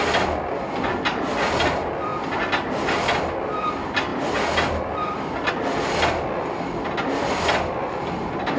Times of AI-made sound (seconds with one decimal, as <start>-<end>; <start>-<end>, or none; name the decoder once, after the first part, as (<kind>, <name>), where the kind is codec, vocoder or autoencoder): none